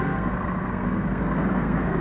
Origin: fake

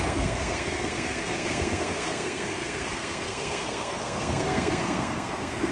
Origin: fake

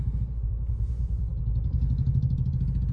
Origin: real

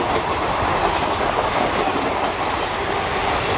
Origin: real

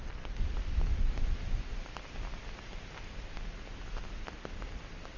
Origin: real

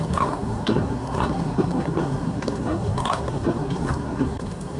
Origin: fake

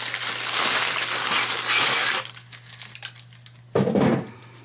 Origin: real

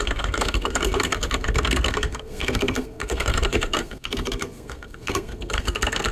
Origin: fake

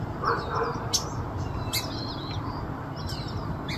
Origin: real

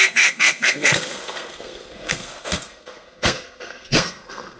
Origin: fake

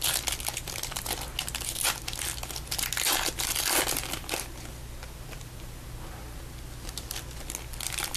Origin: real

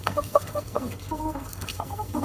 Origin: fake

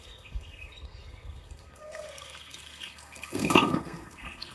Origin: fake